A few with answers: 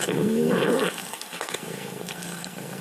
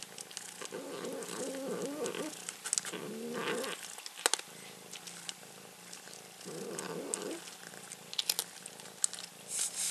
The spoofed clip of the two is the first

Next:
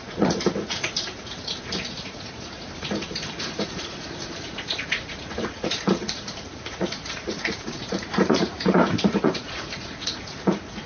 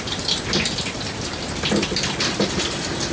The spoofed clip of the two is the first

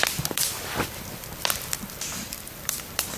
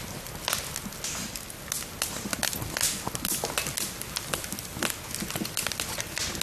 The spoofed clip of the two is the first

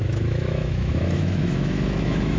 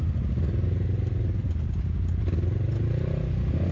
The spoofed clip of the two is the first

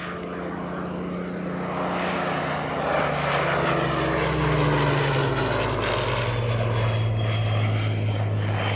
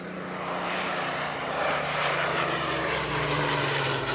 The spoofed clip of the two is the second